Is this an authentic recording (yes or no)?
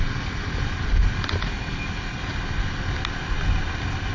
yes